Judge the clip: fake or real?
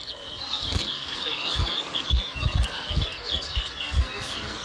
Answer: fake